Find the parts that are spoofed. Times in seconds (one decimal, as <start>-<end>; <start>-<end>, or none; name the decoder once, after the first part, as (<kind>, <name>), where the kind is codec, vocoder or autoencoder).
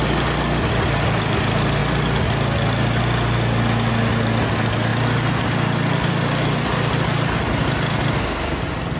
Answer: none